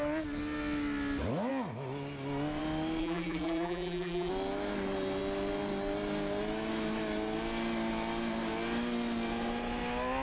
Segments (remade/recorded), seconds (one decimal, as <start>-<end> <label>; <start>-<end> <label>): 0.0-3.0 recorded; 3.0-4.3 remade; 4.3-10.2 recorded